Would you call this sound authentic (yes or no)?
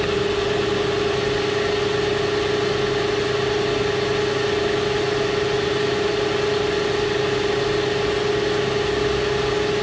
yes